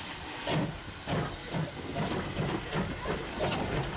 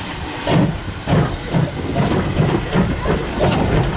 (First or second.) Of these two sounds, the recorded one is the first